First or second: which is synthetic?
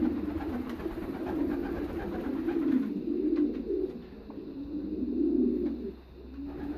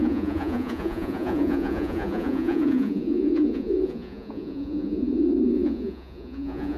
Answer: second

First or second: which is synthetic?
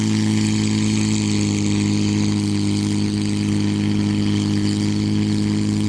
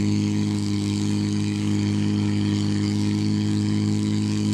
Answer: second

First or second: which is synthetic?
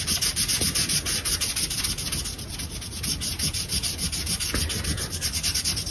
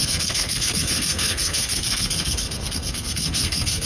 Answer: second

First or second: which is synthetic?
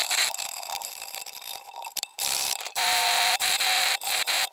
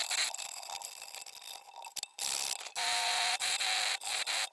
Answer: first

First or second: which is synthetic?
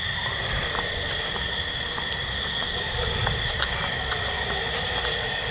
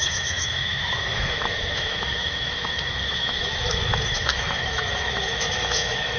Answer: second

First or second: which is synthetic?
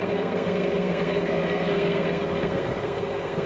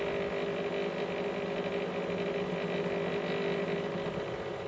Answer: first